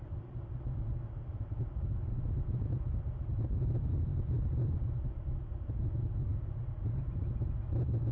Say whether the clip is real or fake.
real